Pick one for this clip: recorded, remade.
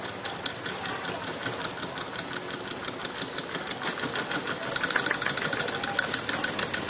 recorded